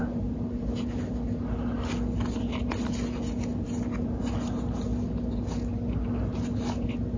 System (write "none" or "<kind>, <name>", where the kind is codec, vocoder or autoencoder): none